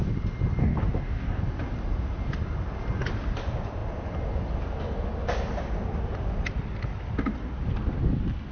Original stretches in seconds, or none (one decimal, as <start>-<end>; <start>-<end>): 0.0-0.6; 1.4-8.5